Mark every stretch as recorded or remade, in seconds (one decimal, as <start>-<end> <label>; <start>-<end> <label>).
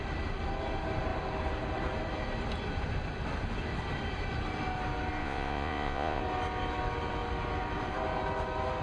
0.0-5.2 recorded; 5.2-6.2 remade; 6.2-8.8 recorded